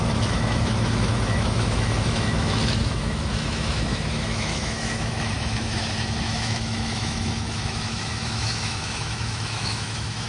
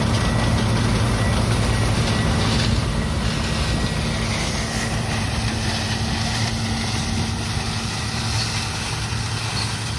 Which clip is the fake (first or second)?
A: first